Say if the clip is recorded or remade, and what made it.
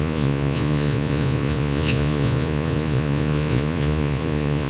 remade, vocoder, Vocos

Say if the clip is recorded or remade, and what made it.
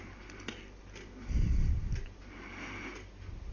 recorded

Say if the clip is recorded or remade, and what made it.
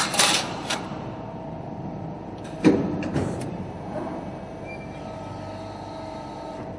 remade, vocoder, BigVGAN v2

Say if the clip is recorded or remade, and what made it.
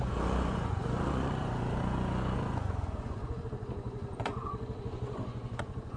remade, vocoder, Vocos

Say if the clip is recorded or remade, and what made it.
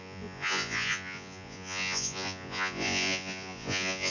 remade, vocoder, Vocos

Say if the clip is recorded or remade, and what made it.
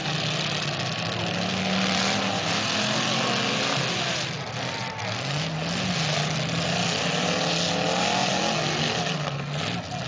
recorded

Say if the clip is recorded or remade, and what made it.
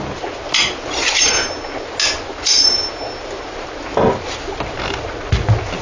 recorded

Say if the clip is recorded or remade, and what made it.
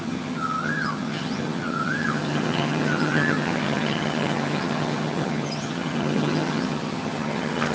remade, vocoder, HiFi-GAN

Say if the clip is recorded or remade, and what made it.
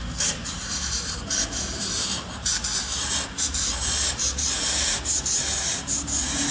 remade, vocoder, BigVGAN v2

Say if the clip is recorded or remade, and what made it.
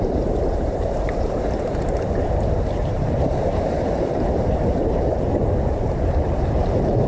remade, vocoder, BigVGAN v2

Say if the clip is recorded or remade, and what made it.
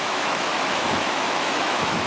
remade, autoencoder, DAC-VAE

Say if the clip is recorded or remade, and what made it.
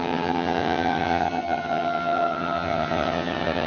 remade, vocoder, HiFi-GAN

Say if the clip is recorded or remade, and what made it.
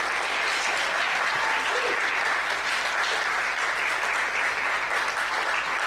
recorded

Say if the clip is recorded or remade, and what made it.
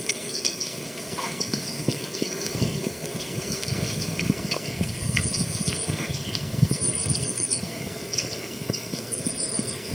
remade, codec, SNAC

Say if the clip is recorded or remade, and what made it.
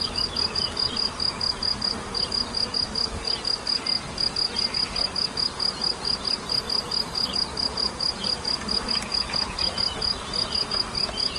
recorded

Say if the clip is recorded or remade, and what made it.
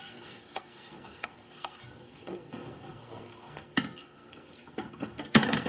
remade, codec, SNAC